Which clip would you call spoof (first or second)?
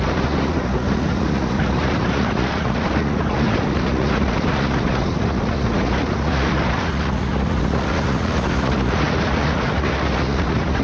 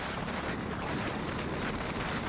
first